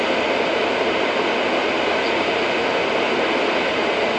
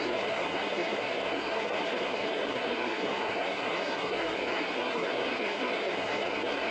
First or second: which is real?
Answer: first